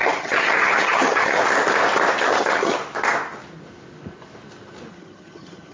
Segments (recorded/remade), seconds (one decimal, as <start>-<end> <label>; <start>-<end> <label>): 0.0-1.4 remade; 1.4-2.2 recorded; 2.2-2.8 remade; 2.8-4.9 recorded; 4.9-5.7 remade